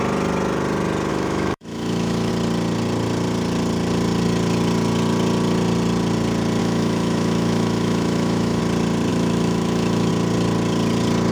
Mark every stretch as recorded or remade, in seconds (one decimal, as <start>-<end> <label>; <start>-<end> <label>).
0.0-1.1 recorded; 1.1-2.3 remade; 2.3-6.6 recorded; 6.6-8.6 remade; 8.6-9.1 recorded; 9.1-10.1 remade; 10.1-11.3 recorded